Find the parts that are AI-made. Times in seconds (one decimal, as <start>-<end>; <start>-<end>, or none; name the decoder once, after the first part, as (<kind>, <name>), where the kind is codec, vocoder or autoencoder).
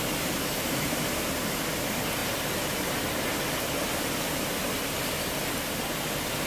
none